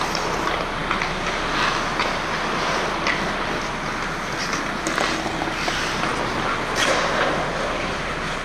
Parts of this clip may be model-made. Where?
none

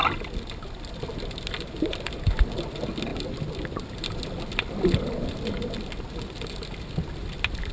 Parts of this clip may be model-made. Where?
none

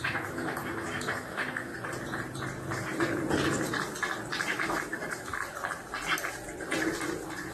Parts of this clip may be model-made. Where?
0.0-1.7; 4.6-5.3

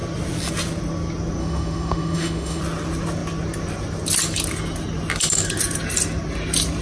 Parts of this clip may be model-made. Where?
1.4-2.6